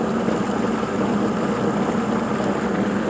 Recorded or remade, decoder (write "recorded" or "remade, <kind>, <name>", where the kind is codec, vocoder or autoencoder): recorded